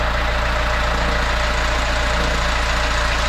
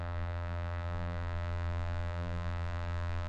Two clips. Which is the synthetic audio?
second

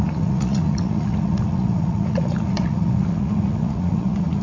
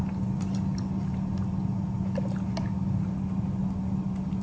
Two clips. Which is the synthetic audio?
first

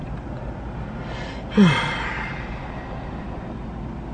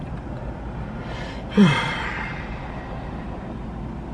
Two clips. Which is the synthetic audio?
second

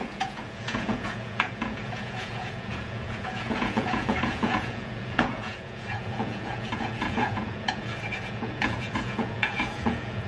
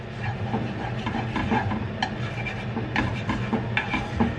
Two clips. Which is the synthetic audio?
first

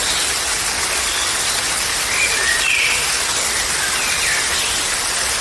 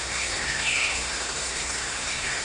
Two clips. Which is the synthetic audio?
second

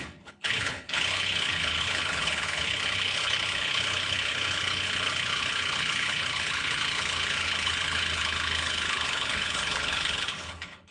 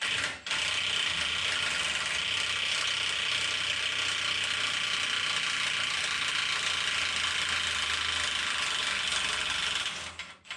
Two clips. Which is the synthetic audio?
first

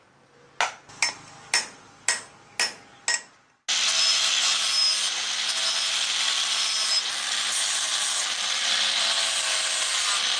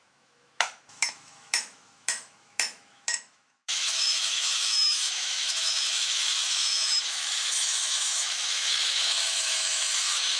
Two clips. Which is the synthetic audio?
second